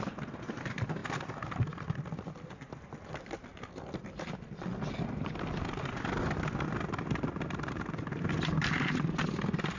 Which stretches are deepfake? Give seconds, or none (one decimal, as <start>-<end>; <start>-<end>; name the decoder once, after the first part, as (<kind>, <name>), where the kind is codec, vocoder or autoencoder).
none

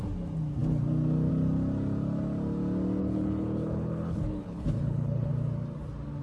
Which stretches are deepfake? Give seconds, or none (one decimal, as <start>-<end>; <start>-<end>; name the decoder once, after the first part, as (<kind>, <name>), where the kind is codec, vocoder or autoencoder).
3.0-5.3 (codec, HILCodec)

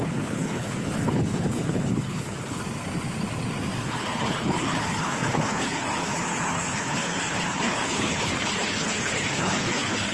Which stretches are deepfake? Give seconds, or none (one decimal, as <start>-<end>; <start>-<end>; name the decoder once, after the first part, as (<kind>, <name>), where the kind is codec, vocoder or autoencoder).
0.0-2.6 (codec, HILCodec); 3.8-10.1

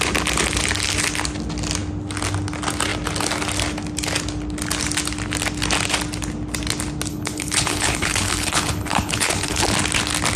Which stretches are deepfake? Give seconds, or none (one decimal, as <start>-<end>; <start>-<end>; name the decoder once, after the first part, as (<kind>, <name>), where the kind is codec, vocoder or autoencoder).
7.1-9.6 (codec, HILCodec)

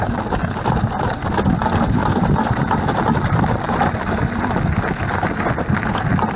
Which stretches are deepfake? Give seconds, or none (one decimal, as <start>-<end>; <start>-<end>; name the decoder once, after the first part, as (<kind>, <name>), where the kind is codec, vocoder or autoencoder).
none